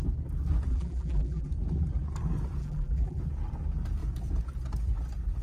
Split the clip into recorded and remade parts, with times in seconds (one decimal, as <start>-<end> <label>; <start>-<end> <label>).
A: 0.0-0.7 recorded; 0.7-1.5 remade; 1.5-2.6 recorded; 2.6-3.2 remade; 3.2-5.4 recorded